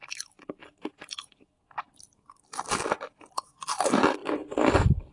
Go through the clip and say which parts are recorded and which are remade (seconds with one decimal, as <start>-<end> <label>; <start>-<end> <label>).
0.0-5.1 recorded

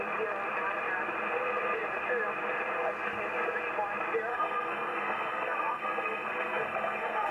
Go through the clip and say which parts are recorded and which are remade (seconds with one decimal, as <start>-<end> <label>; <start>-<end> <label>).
0.0-4.3 recorded; 4.3-7.3 remade

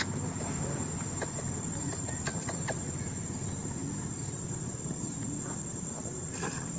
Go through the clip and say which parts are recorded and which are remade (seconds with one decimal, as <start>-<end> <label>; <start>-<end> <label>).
0.0-6.8 recorded

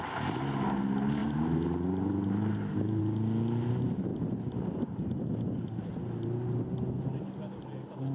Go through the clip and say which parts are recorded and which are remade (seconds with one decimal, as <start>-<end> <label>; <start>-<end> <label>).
0.0-1.2 recorded; 1.2-3.0 remade; 3.0-8.1 recorded

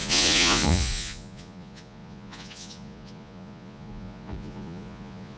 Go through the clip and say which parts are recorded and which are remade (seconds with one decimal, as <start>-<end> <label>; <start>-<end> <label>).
0.0-5.4 remade

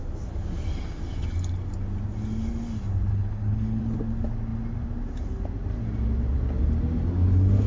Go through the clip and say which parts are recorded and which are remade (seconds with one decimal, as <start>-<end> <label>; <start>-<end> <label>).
0.0-3.1 recorded; 3.1-3.8 remade; 3.8-7.7 recorded

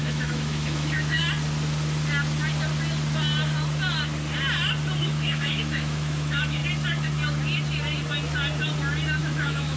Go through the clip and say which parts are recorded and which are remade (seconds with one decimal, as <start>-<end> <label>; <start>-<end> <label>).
0.0-1.2 remade; 1.2-5.0 recorded; 5.0-6.6 remade; 6.6-9.2 recorded; 9.2-9.8 remade